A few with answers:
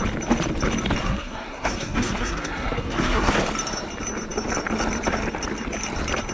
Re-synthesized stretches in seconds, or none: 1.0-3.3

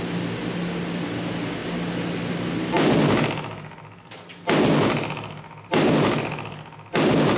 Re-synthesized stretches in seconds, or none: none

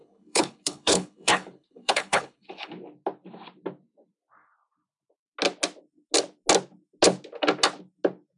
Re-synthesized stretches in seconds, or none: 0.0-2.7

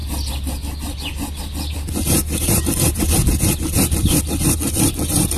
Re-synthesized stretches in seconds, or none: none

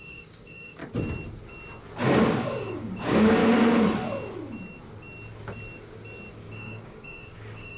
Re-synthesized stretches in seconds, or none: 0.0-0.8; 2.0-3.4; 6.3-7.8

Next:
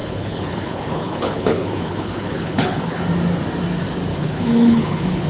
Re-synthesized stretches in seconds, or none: 0.0-3.0; 4.1-5.3

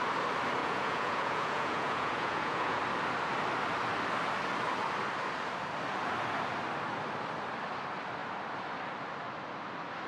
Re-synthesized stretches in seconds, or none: 0.6-2.8